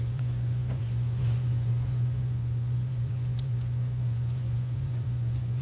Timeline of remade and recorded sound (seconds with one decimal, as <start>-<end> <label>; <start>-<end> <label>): 0.0-5.6 remade